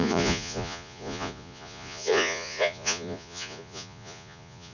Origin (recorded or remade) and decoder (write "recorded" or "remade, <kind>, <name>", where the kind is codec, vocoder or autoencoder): remade, vocoder, Vocos